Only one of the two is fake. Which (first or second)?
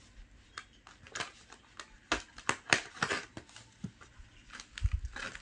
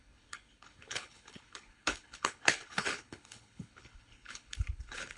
second